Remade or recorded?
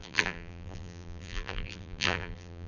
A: remade